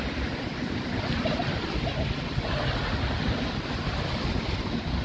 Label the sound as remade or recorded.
recorded